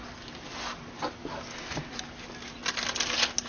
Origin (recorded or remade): recorded